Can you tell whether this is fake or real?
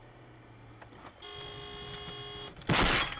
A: real